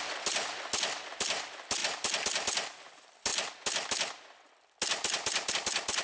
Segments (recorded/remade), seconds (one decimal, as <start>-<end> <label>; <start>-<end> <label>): 0.0-6.0 recorded